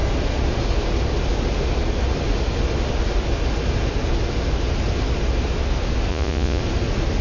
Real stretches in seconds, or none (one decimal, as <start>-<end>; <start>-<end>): 0.0-6.1; 6.6-7.2